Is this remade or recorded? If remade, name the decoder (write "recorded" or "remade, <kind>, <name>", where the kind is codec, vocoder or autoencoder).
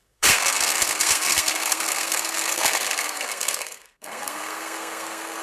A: remade, codec, SNAC